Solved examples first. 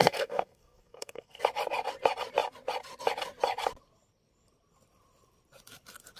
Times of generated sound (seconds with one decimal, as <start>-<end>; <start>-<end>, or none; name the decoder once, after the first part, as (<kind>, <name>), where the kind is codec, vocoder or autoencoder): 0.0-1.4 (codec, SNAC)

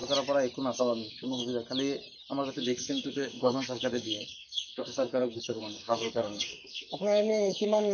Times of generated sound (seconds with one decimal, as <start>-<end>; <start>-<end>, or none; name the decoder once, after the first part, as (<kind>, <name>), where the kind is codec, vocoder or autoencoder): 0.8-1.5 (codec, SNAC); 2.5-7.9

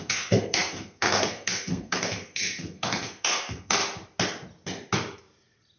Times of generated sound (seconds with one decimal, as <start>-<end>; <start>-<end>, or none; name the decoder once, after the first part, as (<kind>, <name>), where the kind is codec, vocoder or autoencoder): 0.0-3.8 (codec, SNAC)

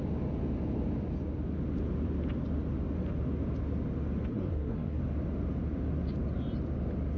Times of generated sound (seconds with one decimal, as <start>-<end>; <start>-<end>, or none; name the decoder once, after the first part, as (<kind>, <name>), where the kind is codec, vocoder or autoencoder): 4.3-5.0 (codec, SNAC)

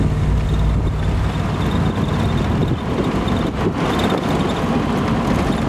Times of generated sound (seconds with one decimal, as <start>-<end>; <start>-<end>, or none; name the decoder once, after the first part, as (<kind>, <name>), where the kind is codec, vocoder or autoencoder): none